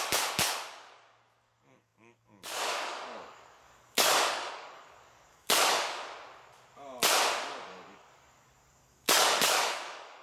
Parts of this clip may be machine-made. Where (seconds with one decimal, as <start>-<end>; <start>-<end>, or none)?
0.0-6.0; 7.7-10.2